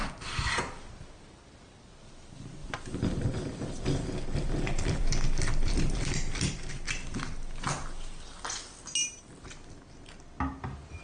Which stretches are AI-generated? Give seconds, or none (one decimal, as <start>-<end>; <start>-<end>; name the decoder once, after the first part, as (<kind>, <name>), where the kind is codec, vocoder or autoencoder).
2.6-6.7 (vocoder, BigVGAN v2)